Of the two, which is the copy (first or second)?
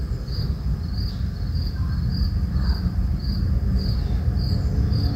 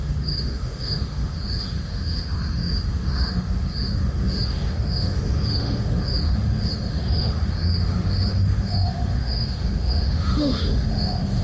second